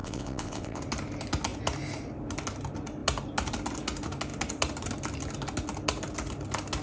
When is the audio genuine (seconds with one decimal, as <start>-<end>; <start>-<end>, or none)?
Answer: 0.8-6.8